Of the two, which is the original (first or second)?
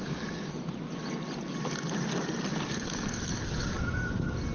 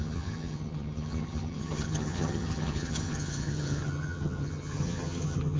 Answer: first